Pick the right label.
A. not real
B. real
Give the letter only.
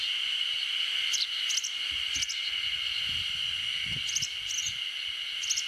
B